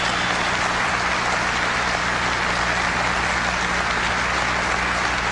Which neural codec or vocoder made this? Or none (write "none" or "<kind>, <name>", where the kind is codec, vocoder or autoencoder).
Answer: none